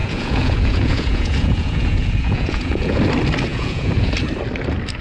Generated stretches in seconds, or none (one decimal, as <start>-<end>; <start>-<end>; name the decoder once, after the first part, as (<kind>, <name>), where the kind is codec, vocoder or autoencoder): 0.0-3.0 (vocoder, Vocos); 3.5-4.1